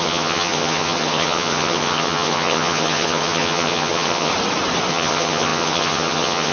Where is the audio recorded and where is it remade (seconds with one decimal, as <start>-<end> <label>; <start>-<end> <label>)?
0.0-4.3 remade; 4.3-4.9 recorded; 4.9-6.5 remade

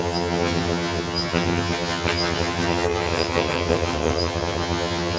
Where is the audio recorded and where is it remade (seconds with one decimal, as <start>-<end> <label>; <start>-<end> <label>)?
0.0-5.2 remade